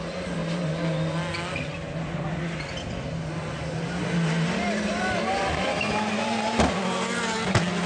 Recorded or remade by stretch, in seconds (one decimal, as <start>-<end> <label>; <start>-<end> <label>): 0.0-7.9 recorded